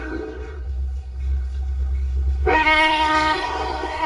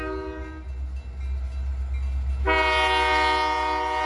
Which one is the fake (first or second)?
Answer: first